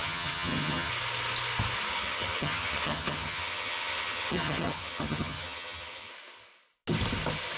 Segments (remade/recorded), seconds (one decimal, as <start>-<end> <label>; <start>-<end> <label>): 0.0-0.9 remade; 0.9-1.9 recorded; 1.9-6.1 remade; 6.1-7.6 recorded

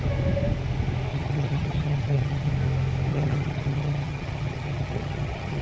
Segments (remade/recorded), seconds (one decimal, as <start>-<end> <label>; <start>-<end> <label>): 0.0-1.1 recorded; 1.1-2.5 remade; 2.5-3.1 recorded; 3.1-5.6 remade

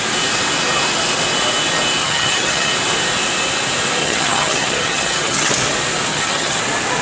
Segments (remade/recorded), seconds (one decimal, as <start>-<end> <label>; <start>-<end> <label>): 0.0-2.0 recorded; 2.0-2.7 remade; 2.7-4.0 recorded; 4.0-5.5 remade; 5.5-6.1 recorded; 6.1-6.6 remade; 6.6-7.0 recorded

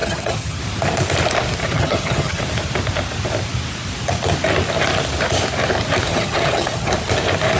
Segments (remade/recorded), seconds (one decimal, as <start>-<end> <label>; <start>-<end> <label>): 0.0-0.6 remade; 0.6-1.6 recorded; 1.6-2.4 remade; 2.4-6.1 recorded; 6.1-6.9 remade; 6.9-7.6 recorded